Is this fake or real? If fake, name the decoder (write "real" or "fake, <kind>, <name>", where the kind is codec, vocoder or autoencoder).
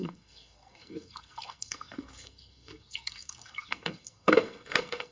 fake, codec, SNAC